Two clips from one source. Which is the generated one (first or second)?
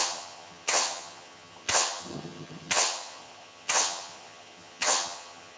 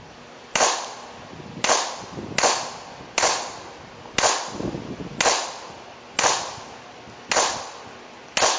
first